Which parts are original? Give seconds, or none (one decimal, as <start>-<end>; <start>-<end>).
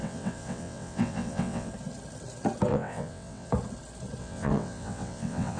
1.7-2.7; 3.5-4.2